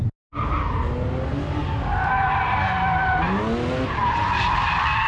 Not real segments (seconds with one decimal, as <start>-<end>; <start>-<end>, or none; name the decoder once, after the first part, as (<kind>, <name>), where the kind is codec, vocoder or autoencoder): none